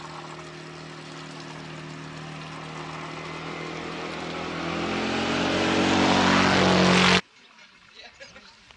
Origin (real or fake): real